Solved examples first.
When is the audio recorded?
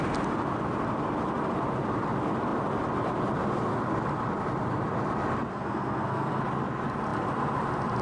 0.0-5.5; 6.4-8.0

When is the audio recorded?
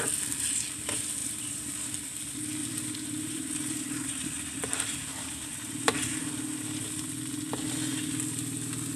0.0-1.2; 1.8-2.6; 6.3-9.0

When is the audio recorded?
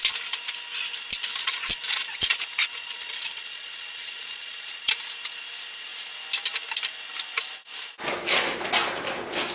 0.0-1.3; 4.9-9.5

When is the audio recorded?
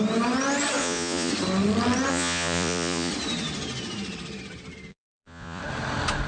0.0-0.8; 1.3-2.1; 3.1-4.9; 5.6-6.3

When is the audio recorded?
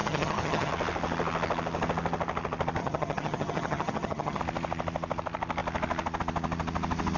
0.7-2.8; 4.4-7.2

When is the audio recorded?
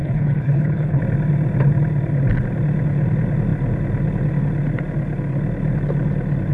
1.0-6.5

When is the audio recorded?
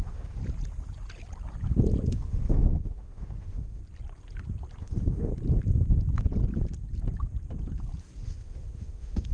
0.4-2.1; 3.8-4.8; 5.3-8.2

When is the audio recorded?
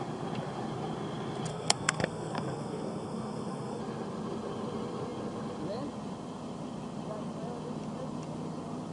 0.0-1.5; 3.8-8.9